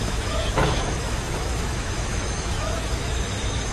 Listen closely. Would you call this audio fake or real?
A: fake